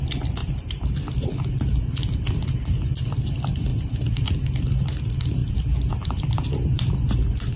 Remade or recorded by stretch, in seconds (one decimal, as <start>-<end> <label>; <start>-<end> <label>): 0.0-0.4 recorded; 0.4-1.0 remade; 1.0-3.7 recorded; 3.7-4.3 remade; 4.3-5.4 recorded; 5.4-6.9 remade; 6.9-7.6 recorded